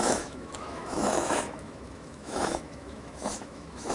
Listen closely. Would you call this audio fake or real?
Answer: fake